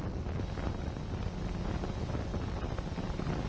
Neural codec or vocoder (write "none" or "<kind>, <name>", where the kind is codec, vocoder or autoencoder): none